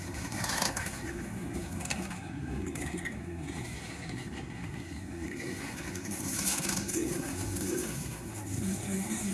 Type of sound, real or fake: fake